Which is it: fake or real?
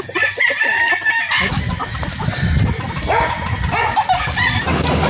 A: real